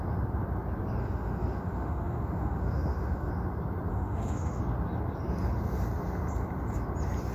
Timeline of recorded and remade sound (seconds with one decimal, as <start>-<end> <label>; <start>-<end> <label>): 0.0-1.0 recorded; 1.0-3.3 remade; 3.3-3.9 recorded; 3.9-4.6 remade; 4.6-7.3 recorded